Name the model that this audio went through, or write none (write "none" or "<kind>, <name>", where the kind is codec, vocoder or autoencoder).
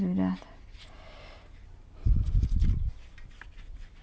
none